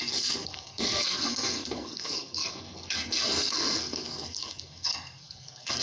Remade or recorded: remade